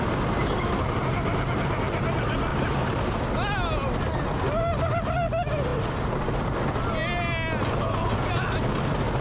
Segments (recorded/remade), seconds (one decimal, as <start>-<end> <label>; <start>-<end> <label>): 0.0-9.2 recorded